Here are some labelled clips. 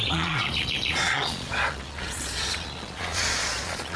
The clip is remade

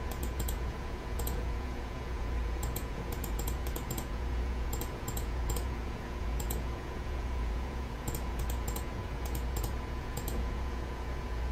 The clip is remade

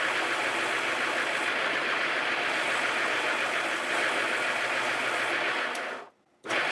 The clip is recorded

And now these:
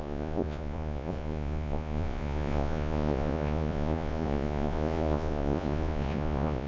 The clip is remade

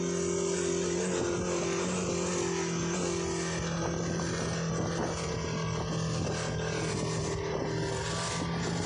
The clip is recorded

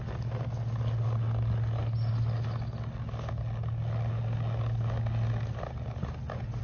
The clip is recorded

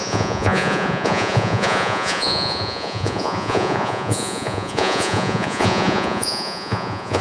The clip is remade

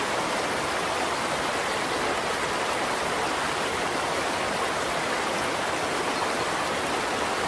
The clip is recorded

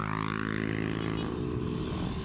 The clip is recorded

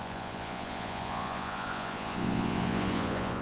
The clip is remade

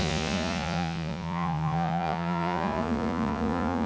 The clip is remade